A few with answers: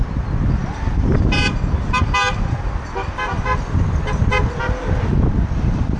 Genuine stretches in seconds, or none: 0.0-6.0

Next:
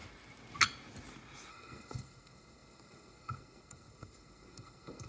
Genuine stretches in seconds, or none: 0.0-1.5

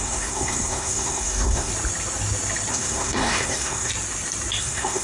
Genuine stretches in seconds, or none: 1.7-2.7; 3.9-4.6

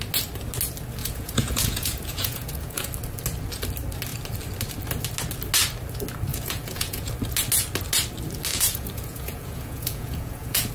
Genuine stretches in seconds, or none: 0.0-1.0; 2.9-6.3; 7.1-8.5

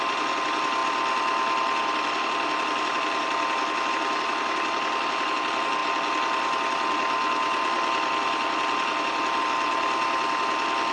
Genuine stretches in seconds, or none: 0.0-10.9

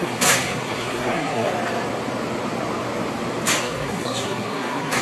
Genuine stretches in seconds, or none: 1.5-3.6

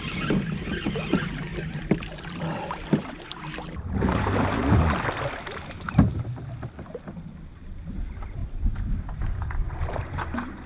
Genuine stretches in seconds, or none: 0.0-1.5; 3.4-4.6; 5.5-8.4; 10.2-10.7

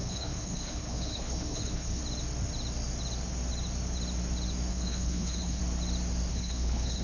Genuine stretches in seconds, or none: 2.0-4.7; 5.6-6.3